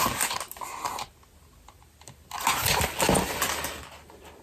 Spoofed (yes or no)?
no